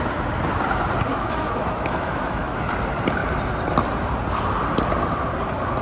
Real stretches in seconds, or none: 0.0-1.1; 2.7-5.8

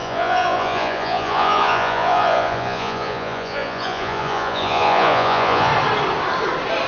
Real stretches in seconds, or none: 5.7-6.9

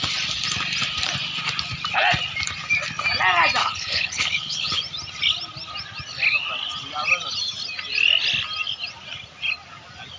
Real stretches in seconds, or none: 0.0-3.6; 4.8-10.2

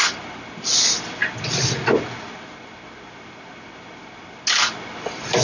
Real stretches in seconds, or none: 0.0-5.4

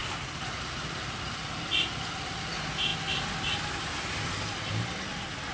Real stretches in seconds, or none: 0.0-5.5

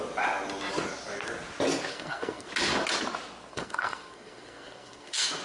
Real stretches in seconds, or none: 0.0-1.9; 2.5-3.5